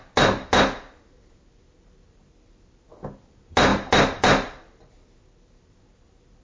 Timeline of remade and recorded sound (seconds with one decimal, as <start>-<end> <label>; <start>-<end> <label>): 0.0-6.4 recorded